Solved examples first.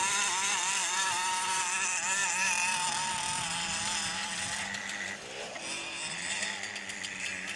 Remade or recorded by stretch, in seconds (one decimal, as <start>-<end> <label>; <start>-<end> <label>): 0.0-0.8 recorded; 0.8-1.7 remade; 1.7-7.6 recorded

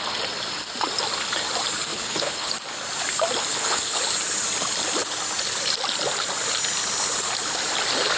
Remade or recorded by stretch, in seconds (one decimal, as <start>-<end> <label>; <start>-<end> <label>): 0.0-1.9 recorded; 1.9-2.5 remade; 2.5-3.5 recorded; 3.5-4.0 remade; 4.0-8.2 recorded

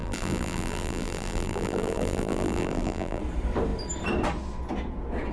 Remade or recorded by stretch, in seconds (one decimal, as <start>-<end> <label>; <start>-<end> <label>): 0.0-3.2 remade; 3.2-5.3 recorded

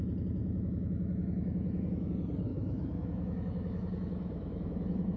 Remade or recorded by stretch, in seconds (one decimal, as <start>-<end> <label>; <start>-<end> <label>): 0.0-0.4 recorded; 0.4-2.1 remade; 2.1-2.5 recorded; 2.5-5.2 remade